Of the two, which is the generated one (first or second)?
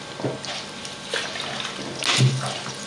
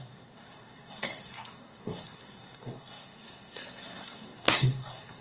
second